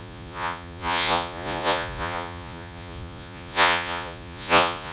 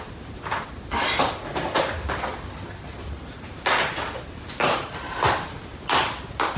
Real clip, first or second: second